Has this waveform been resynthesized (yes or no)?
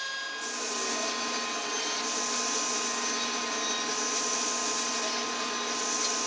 no